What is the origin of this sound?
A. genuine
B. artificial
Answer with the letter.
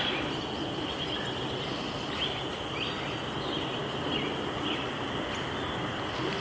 A